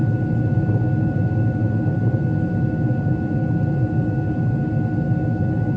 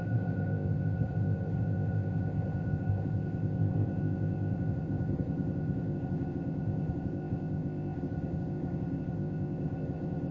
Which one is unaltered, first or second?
first